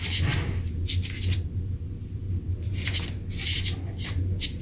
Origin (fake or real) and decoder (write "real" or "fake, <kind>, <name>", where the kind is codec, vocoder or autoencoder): real